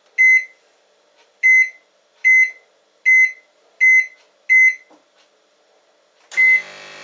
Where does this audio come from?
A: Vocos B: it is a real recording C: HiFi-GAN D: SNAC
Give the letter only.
B